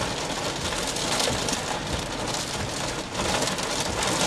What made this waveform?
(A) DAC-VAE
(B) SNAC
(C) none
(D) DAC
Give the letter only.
C